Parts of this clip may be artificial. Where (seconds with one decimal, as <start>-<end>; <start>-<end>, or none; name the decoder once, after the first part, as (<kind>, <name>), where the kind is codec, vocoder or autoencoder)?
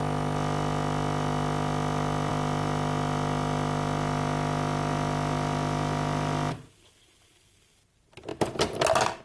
none